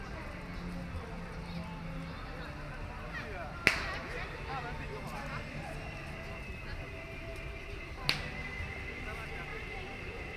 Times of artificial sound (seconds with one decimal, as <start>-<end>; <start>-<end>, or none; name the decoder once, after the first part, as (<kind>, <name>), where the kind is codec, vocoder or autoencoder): 9.5-10.4 (vocoder, BigVGAN v2)